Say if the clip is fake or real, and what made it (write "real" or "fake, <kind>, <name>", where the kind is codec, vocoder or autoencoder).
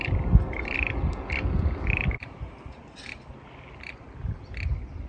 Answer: real